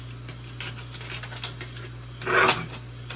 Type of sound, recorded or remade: recorded